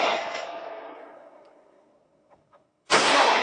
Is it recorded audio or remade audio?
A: remade